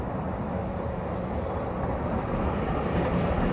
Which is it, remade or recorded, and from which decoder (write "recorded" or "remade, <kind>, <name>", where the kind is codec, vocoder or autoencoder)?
recorded